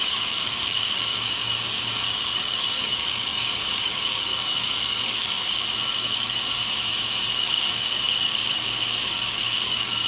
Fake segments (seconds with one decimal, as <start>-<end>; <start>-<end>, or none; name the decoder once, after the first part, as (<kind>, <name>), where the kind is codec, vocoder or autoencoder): 0.0-6.6 (codec, DAC); 7.3-10.1